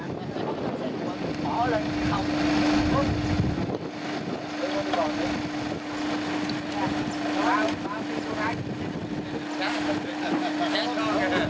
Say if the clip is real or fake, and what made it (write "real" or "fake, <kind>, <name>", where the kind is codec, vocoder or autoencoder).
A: real